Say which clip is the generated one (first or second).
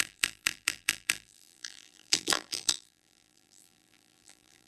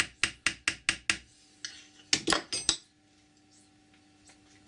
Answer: first